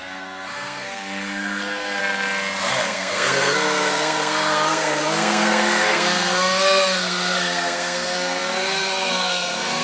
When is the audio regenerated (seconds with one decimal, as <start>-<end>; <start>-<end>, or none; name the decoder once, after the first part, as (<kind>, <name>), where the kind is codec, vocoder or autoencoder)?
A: 0.0-2.0 (codec, SNAC); 2.7-9.8